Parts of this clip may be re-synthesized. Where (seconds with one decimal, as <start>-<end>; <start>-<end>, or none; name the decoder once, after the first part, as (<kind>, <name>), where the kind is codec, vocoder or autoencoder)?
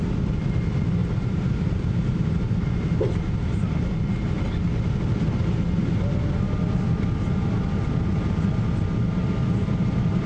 1.0-3.9 (vocoder, BigVGAN v2); 9.6-10.3